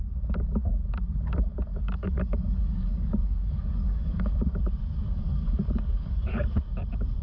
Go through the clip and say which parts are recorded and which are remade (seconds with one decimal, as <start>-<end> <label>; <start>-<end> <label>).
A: 0.0-1.7 recorded; 1.7-4.3 remade; 4.3-5.1 recorded; 5.1-6.6 remade; 6.6-7.2 recorded